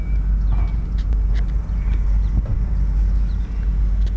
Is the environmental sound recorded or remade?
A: recorded